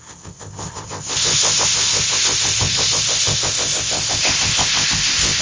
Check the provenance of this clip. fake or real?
fake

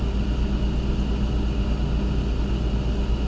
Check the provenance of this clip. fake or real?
real